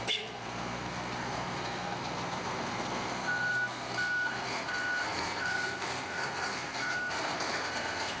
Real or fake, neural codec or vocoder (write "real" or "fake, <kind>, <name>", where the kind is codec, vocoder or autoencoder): fake, codec, SNAC